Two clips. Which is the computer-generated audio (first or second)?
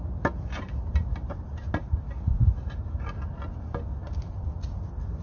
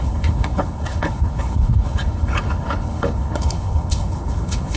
second